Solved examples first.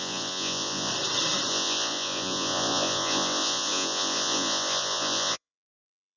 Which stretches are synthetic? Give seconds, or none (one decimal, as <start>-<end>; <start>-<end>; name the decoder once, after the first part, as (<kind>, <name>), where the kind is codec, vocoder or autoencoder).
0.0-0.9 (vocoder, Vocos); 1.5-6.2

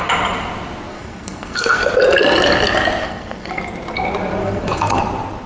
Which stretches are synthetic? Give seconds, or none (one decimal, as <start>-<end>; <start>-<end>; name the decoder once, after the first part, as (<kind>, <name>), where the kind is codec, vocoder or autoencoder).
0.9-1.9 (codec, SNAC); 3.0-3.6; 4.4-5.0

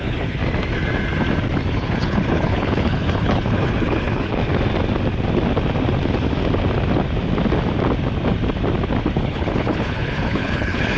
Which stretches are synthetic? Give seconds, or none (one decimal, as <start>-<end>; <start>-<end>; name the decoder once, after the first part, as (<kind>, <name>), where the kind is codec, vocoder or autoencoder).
0.0-0.4 (codec, HILCodec); 1.7-4.4; 9.2-11.0

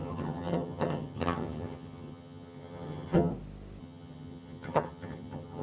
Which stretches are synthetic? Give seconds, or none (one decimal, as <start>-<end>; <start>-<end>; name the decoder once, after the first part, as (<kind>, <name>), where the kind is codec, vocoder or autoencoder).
0.0-3.3 (vocoder, HiFi-GAN); 3.8-5.6

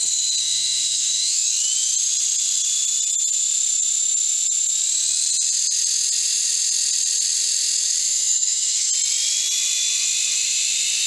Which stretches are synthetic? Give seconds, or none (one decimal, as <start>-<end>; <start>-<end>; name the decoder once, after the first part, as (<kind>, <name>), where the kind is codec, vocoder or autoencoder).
0.4-1.5 (autoencoder, DAC-VAE); 8.0-8.9